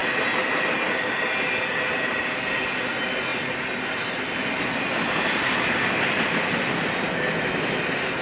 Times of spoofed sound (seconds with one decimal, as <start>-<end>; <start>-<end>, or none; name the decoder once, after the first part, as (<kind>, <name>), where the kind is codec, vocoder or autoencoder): none